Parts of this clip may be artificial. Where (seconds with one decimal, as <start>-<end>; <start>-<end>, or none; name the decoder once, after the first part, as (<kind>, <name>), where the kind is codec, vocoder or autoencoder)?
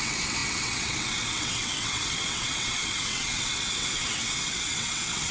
0.0-5.3 (vocoder, WaveNeXt)